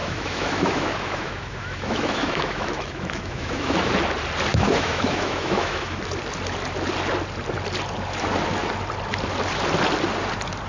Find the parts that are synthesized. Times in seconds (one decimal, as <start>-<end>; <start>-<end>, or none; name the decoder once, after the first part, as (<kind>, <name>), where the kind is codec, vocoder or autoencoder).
0.0-3.9 (autoencoder, DAC-VAE); 4.5-6.0

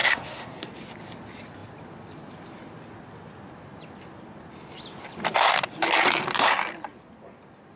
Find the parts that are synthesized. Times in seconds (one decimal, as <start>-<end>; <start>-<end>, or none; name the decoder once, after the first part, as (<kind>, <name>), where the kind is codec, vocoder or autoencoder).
0.0-0.7 (codec, SNAC)

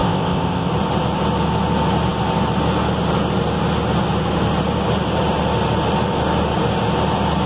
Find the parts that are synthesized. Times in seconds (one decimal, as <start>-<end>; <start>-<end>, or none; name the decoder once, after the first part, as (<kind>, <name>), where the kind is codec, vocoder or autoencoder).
0.0-0.7 (codec, ZipCodec)

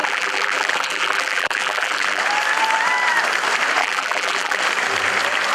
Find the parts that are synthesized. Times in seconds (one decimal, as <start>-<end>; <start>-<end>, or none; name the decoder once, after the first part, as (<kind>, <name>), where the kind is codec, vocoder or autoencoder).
0.0-2.2 (vocoder, BigVGAN v2); 3.8-4.6

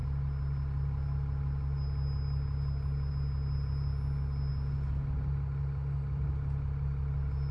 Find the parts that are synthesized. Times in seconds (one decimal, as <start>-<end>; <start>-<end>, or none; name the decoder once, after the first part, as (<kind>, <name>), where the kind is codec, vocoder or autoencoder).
none

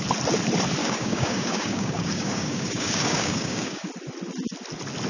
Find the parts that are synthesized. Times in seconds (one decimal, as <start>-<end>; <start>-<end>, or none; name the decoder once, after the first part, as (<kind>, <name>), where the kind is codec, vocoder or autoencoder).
0.8-3.9 (codec, DAC)

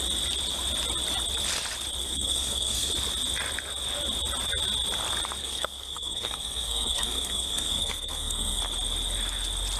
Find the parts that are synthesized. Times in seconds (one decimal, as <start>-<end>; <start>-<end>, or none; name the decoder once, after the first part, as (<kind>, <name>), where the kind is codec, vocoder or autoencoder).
2.0-2.9 (codec, SNAC); 5.4-8.6